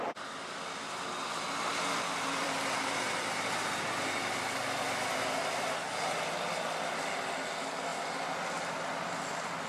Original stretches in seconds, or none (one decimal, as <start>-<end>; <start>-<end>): 0.0-1.7; 5.9-7.9; 8.8-9.7